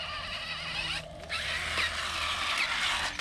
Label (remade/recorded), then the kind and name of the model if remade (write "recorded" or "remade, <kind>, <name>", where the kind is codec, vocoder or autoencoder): recorded